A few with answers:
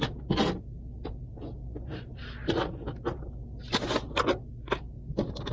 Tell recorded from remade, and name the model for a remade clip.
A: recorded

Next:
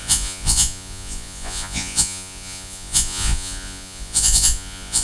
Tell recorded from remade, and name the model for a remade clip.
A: remade, vocoder, Vocos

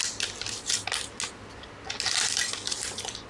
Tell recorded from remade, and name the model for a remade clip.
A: recorded